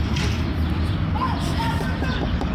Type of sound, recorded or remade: recorded